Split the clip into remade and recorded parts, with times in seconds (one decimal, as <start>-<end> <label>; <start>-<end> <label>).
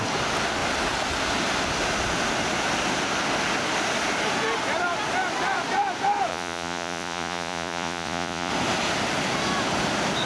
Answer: 0.0-6.3 recorded; 6.3-8.5 remade; 8.5-10.3 recorded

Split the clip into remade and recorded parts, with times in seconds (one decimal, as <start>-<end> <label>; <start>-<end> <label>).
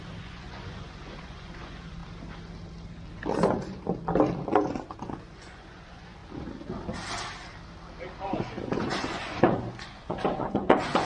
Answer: 0.0-2.0 remade; 2.0-4.5 recorded; 4.5-6.2 remade; 6.2-8.3 recorded; 8.3-11.0 remade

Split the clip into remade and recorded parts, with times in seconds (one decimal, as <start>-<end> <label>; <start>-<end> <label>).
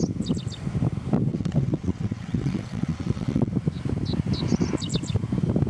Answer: 0.0-1.3 recorded; 1.3-3.5 remade; 3.5-5.7 recorded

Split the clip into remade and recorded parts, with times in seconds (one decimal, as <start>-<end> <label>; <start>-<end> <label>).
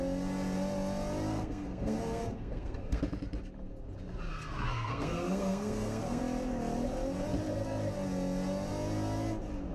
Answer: 0.0-1.3 recorded; 1.3-3.0 remade; 3.0-4.3 recorded; 4.3-6.2 remade; 6.2-9.7 recorded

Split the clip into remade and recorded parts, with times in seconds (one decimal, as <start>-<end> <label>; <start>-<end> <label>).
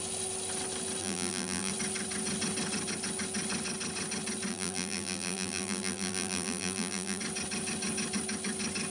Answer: 0.0-1.0 recorded; 1.0-1.7 remade; 1.7-4.5 recorded; 4.5-7.2 remade; 7.2-8.9 recorded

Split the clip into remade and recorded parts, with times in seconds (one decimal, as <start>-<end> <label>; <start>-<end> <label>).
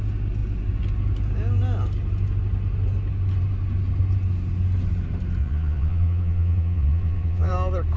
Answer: 0.0-5.4 recorded; 5.4-7.5 remade; 7.5-8.0 recorded